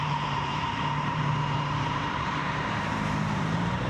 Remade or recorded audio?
remade